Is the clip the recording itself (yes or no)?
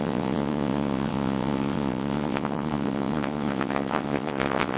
no